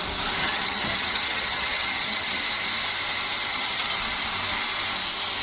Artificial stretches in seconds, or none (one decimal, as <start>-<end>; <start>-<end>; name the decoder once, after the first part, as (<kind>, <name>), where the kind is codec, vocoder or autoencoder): 0.4-2.4 (vocoder, HiFi-GAN); 3.5-4.0